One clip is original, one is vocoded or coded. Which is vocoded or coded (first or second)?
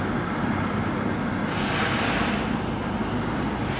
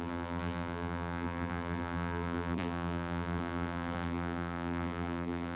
second